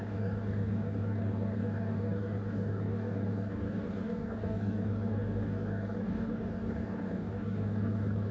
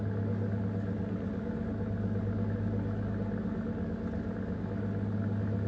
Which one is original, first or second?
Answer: second